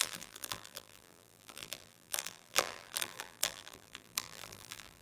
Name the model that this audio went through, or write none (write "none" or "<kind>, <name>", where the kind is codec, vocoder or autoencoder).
vocoder, BigVGAN v2